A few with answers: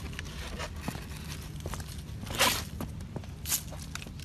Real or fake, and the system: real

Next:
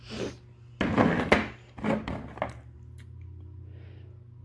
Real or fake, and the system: real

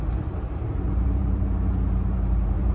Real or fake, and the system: fake, vocoder, BigVGAN v2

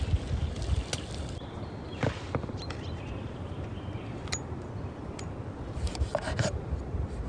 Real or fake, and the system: real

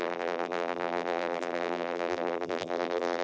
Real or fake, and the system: fake, vocoder, BigVGAN v2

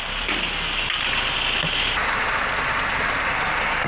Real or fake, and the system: real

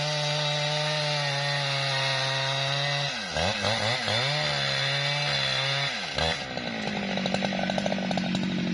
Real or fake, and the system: real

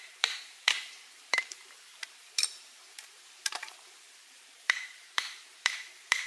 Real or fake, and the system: fake, vocoder, BigVGAN v2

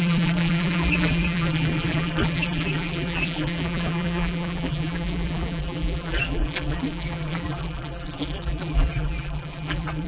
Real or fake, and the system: fake, vocoder, BigVGAN v2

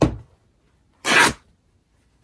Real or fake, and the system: real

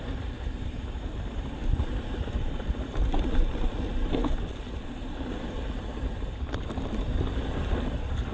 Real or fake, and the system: fake, vocoder, BigVGAN v2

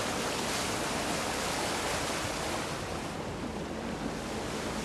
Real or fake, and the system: real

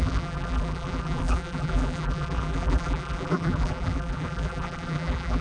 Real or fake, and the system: fake, vocoder, BigVGAN v2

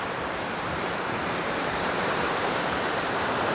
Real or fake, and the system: fake, vocoder, BigVGAN v2